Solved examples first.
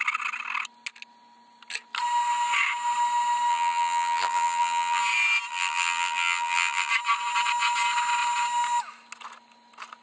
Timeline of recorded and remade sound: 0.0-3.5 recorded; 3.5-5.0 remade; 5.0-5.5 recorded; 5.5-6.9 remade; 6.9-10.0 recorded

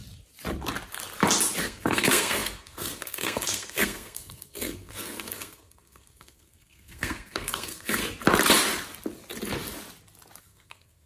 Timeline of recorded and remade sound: 0.0-1.6 recorded; 1.6-8.0 remade; 8.0-10.4 recorded; 10.4-11.1 remade

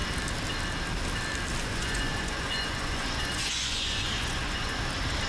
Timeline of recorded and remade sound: 0.0-1.6 recorded; 1.6-4.8 remade; 4.8-5.3 recorded

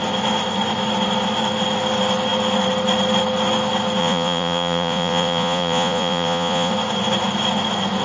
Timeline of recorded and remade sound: 0.0-4.0 recorded; 4.0-6.7 remade; 6.7-8.0 recorded

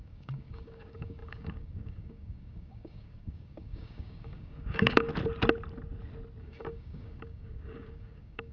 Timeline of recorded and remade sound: 0.0-5.1 remade; 5.1-6.4 recorded; 6.4-8.5 remade

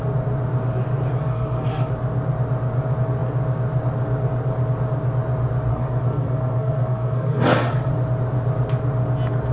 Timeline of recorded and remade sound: 0.0-1.2 recorded; 1.2-1.9 remade; 1.9-5.7 recorded; 5.7-7.9 remade; 7.9-9.5 recorded

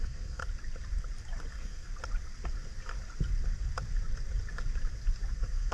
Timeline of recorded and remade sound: 0.0-0.4 remade; 0.4-1.5 recorded; 1.5-1.9 remade; 1.9-5.3 recorded; 5.3-5.7 remade